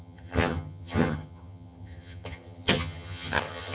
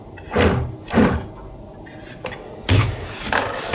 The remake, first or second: first